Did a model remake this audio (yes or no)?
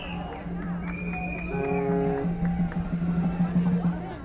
no